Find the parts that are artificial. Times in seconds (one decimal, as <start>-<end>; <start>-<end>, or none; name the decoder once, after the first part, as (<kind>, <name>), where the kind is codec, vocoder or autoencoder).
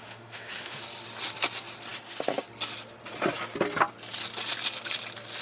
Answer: 0.0-0.8 (autoencoder, DAC-VAE)